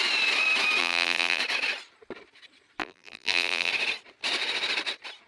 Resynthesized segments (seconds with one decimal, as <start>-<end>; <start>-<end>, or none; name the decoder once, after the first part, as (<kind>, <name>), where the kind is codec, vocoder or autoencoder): 0.8-1.4 (vocoder, BigVGAN v2); 2.8-3.7